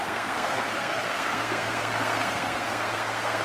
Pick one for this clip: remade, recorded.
remade